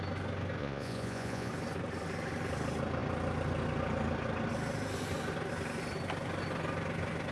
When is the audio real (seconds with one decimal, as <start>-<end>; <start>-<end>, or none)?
0.0-0.6; 1.5-7.3